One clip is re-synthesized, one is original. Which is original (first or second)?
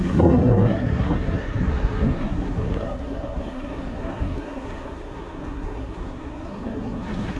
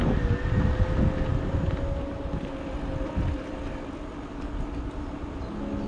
second